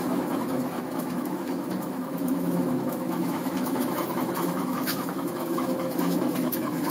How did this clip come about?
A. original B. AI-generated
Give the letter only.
B